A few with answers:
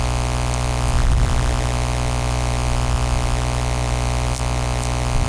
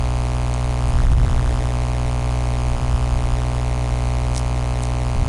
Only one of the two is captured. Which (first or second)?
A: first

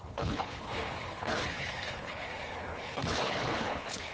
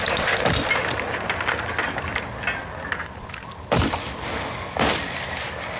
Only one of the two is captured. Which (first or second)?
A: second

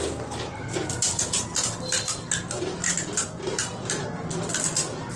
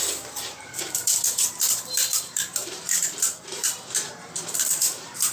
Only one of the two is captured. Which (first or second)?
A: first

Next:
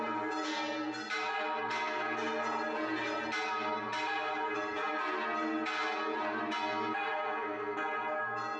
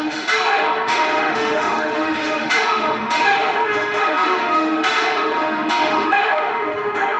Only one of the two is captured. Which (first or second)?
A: first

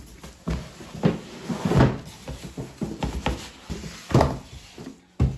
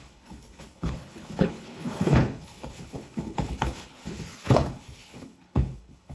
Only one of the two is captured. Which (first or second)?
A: first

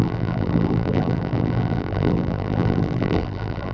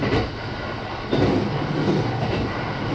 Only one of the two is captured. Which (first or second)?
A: second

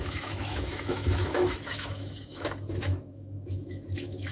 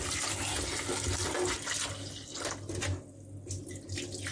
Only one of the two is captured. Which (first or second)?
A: second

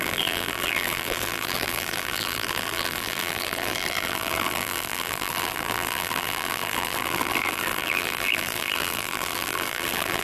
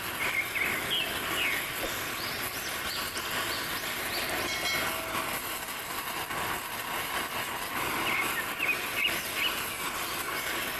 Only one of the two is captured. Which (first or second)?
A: second